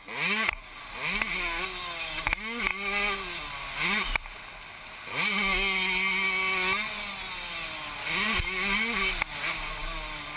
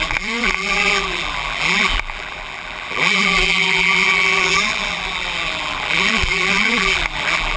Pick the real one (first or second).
first